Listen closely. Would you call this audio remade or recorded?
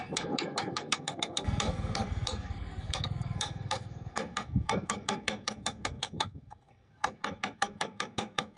remade